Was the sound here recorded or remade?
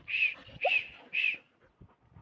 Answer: recorded